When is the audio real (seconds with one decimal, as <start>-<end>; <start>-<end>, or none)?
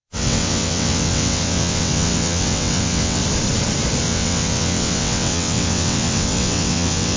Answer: 3.2-4.0